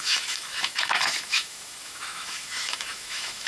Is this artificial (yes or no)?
yes